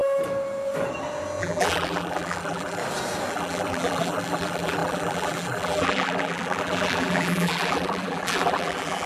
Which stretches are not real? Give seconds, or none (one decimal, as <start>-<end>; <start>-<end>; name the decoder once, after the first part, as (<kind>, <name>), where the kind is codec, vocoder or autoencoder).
1.4-2.8 (vocoder, BigVGAN v2); 3.3-9.1